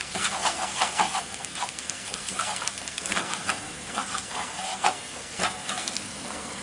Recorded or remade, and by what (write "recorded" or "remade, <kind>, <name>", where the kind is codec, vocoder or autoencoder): remade, codec, SNAC